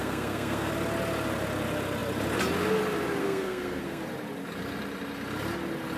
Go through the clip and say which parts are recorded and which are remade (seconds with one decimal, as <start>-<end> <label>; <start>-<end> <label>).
0.0-0.7 remade; 0.7-3.2 recorded; 3.2-4.0 remade; 4.0-6.0 recorded